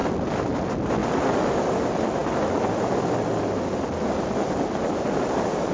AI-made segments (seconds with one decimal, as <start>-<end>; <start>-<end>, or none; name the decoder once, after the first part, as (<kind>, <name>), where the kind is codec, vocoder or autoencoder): none